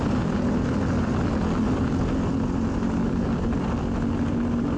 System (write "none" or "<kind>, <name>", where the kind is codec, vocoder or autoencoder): none